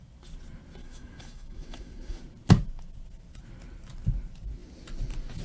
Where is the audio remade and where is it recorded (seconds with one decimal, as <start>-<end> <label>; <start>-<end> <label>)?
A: 0.0-0.8 recorded; 0.8-2.2 remade; 2.2-5.4 recorded